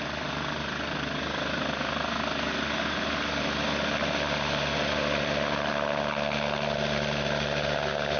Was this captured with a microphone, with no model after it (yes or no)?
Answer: yes